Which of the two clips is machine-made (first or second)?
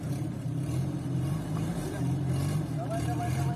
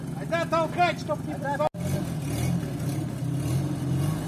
first